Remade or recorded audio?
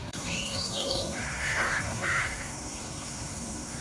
remade